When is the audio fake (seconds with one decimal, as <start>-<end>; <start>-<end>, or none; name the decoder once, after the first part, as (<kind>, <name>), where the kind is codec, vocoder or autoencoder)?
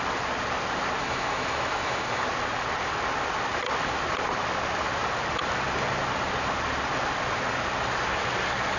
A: 1.0-2.2 (autoencoder, DAC-VAE)